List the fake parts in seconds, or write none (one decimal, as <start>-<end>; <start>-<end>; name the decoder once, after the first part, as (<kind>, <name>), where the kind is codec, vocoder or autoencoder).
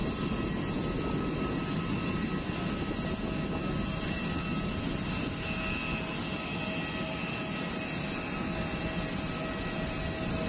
none